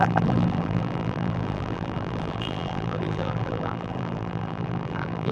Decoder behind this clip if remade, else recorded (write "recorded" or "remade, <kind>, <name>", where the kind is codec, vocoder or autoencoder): remade, vocoder, BigVGAN v2